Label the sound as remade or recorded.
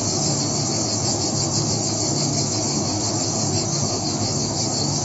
remade